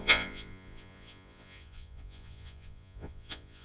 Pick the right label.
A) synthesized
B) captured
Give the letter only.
A